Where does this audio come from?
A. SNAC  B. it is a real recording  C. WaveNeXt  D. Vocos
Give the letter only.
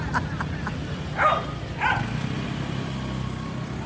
B